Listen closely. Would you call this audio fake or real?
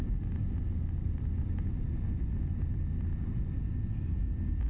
real